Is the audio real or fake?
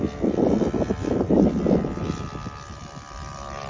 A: real